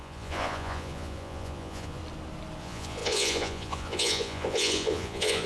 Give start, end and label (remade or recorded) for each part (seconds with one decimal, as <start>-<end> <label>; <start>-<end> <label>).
0.0-2.0 remade; 2.0-2.6 recorded; 2.6-5.5 remade